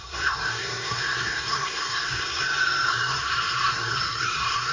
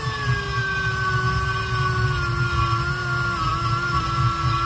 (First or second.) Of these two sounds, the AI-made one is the first